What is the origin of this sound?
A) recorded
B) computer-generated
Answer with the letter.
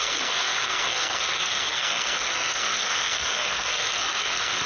B